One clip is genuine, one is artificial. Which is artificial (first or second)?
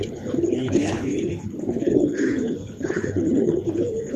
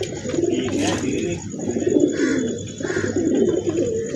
first